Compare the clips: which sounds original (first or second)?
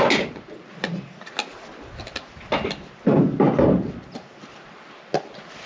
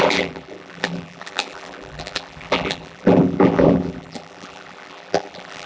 first